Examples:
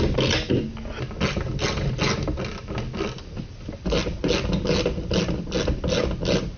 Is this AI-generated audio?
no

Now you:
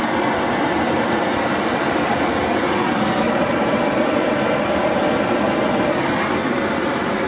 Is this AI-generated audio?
no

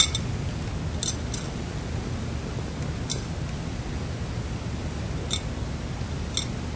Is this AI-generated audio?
no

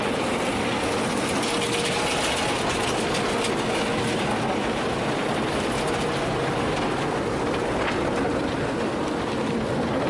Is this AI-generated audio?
no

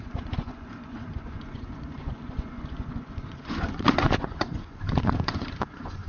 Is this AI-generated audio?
yes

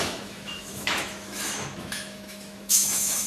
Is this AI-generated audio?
yes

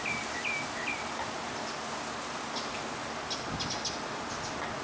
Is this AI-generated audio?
no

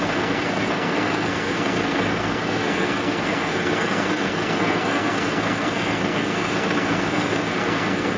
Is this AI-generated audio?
yes